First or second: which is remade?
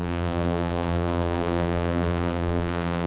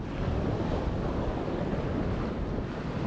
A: first